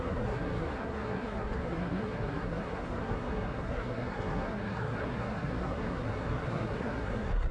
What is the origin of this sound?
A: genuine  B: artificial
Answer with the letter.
B